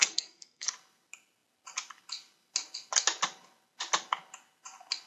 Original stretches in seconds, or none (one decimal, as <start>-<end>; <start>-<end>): 0.7-5.1